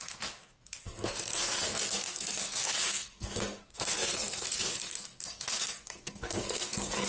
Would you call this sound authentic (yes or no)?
no